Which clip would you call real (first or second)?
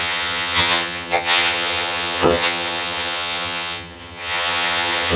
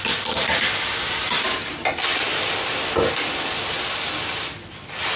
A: second